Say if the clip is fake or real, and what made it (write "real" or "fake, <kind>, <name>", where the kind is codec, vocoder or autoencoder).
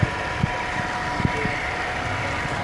real